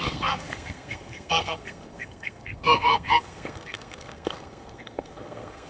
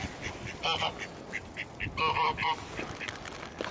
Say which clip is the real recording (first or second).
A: second